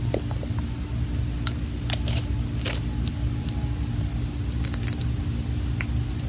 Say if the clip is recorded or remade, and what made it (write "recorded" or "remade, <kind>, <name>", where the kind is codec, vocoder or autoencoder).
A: recorded